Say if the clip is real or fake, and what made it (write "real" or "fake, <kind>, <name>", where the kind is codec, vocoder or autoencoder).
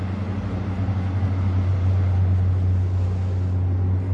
real